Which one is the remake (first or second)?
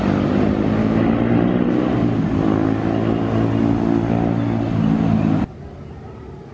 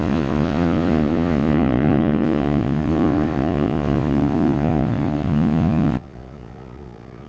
second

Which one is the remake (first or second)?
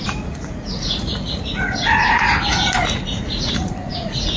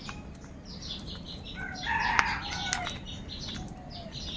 first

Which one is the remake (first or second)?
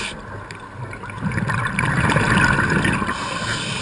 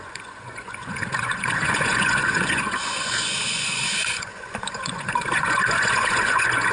second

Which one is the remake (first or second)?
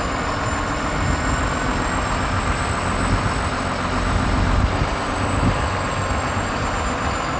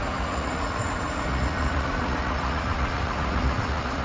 second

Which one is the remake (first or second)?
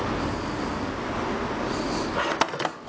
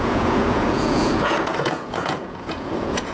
second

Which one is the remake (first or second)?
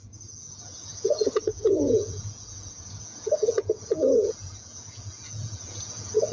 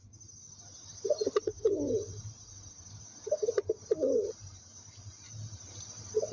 first